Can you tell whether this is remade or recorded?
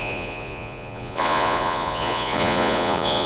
remade